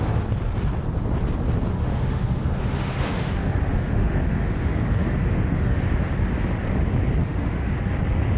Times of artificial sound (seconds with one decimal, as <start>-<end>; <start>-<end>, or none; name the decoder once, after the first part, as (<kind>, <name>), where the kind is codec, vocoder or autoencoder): 1.8-5.8 (autoencoder, DAC-VAE); 7.2-7.7